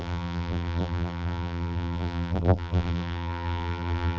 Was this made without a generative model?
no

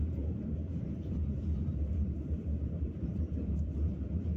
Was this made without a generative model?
no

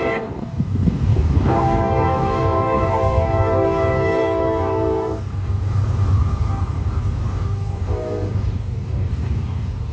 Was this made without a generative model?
no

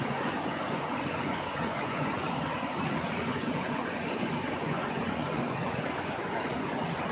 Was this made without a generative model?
no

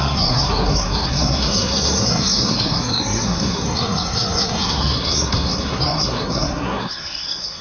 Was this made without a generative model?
no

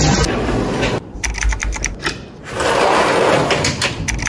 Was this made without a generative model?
yes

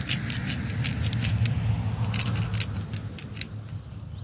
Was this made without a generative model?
yes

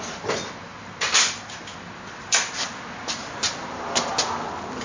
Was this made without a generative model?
yes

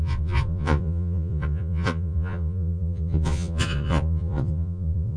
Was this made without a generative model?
no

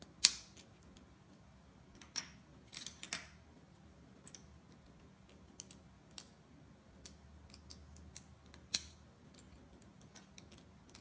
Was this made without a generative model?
yes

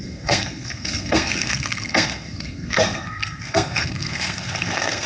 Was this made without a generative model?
no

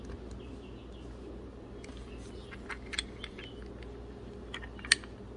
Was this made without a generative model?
yes